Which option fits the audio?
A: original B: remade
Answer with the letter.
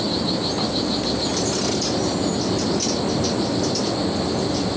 A